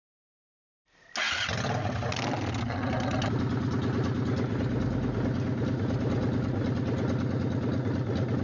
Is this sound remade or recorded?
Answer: recorded